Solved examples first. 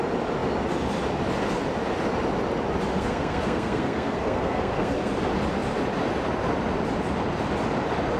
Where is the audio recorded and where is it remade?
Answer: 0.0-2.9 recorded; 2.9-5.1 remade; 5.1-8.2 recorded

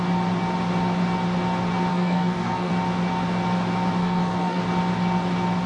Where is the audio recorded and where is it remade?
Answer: 0.0-1.9 recorded; 1.9-2.7 remade; 2.7-4.0 recorded; 4.0-4.6 remade; 4.6-5.7 recorded